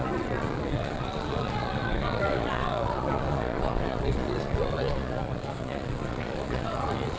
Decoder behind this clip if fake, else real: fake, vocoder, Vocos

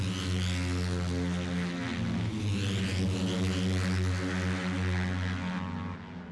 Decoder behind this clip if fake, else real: real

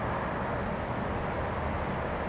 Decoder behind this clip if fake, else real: real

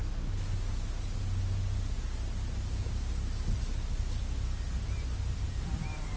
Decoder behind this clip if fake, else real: real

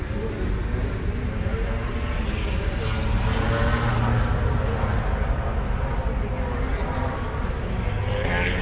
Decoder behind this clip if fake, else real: real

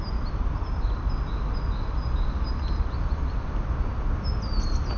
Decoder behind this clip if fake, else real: real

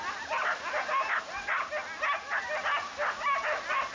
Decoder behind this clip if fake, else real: real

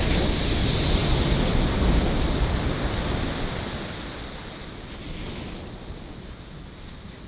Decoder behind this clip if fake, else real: real